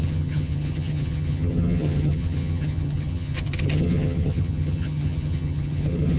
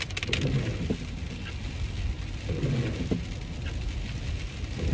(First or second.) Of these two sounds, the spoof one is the first